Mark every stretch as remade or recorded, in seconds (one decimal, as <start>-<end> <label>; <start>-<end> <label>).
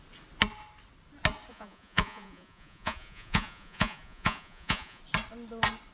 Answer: 0.0-1.5 recorded; 1.5-5.0 remade; 5.0-5.9 recorded